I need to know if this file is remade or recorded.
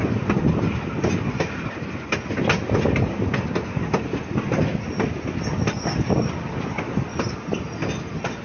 recorded